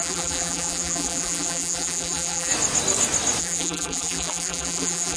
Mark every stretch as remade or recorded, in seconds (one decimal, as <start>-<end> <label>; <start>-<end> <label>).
0.0-2.5 remade; 2.5-3.4 recorded; 3.4-5.2 remade